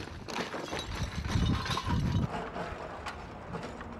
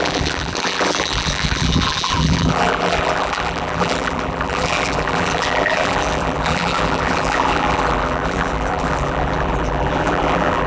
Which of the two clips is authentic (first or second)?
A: first